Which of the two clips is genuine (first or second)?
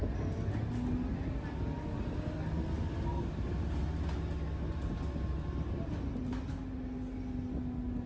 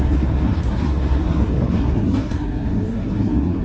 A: first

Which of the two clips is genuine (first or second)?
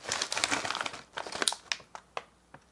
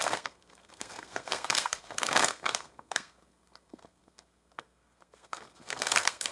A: first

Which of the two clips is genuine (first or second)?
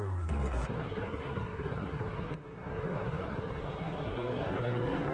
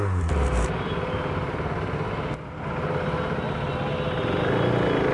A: second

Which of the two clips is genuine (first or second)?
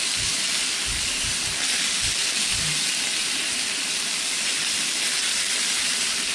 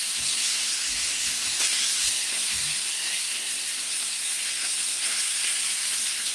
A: first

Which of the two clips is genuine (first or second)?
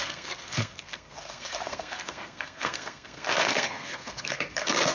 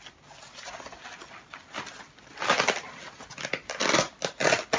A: second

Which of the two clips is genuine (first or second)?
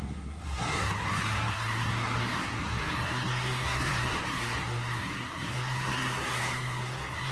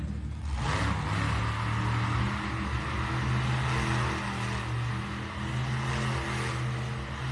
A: second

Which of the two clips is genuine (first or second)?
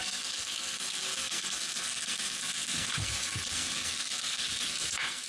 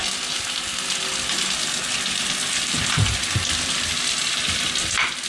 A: second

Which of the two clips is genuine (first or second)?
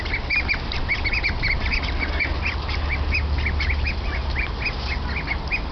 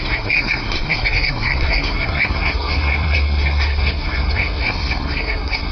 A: first